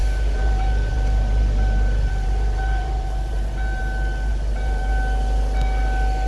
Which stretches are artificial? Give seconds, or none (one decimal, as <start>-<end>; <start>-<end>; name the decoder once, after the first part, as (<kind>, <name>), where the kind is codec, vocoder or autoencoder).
0.0-3.8 (vocoder, BigVGAN v2); 4.3-4.9

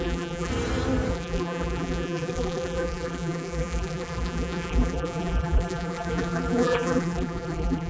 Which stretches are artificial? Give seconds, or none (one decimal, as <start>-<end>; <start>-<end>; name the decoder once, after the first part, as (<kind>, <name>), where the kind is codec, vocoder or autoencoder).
0.0-0.5 (vocoder, BigVGAN v2); 1.1-7.9

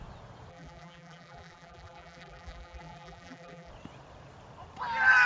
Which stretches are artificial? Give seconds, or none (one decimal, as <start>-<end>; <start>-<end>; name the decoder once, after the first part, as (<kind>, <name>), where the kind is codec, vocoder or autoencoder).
0.5-3.7 (vocoder, BigVGAN v2)

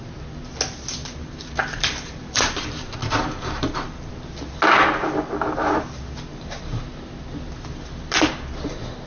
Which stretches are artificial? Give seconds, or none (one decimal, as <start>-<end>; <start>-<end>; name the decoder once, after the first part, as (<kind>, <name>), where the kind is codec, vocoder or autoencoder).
1.0-4.1 (vocoder, BigVGAN v2); 6.3-6.9

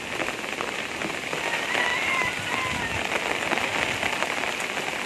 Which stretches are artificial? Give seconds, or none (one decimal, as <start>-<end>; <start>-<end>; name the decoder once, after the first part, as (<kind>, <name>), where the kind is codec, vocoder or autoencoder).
none

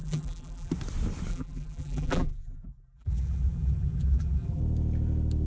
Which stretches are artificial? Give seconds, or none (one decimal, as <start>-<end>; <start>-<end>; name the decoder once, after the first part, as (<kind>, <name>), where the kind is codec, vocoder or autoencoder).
0.0-0.7 (vocoder, BigVGAN v2); 1.3-4.6

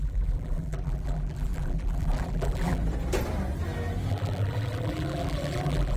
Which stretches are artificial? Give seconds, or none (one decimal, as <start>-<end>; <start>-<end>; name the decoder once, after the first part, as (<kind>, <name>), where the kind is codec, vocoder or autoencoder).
0.0-2.8 (vocoder, BigVGAN v2); 4.1-6.0